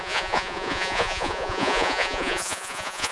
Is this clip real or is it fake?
fake